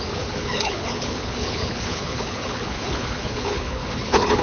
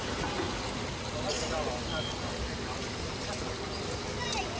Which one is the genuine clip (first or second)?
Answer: second